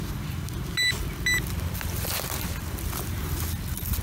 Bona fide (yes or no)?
yes